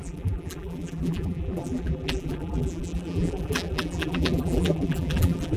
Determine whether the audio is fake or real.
fake